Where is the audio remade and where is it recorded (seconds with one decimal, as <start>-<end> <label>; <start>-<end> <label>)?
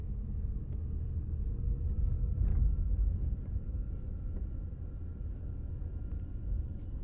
0.0-0.6 remade; 0.6-2.5 recorded; 2.5-3.9 remade; 3.9-7.0 recorded